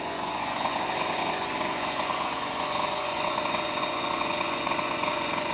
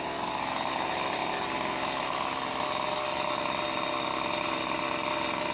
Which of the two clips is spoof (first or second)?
first